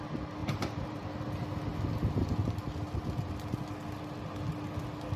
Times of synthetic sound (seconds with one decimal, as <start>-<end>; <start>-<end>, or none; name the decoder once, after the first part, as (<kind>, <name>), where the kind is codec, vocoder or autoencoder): 0.4-1.1 (vocoder, BigVGAN v2)